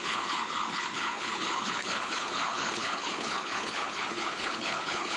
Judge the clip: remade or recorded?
remade